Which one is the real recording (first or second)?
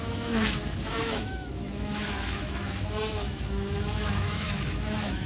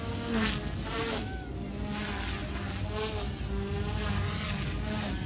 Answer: second